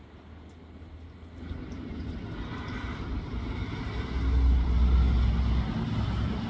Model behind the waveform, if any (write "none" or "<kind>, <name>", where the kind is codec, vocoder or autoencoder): none